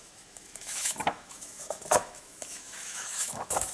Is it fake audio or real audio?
fake